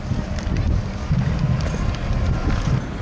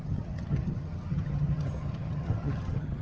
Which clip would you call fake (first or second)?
second